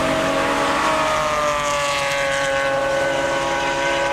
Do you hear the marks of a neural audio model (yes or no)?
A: no